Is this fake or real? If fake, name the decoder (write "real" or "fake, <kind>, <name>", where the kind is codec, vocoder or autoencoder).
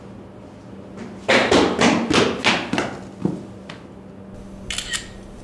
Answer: real